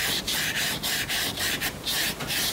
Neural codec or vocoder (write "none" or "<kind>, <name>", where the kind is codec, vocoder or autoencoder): none